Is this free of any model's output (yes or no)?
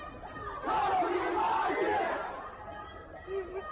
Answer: yes